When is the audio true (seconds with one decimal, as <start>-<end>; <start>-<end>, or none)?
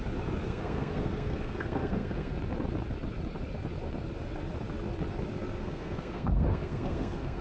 0.0-0.4; 2.3-5.6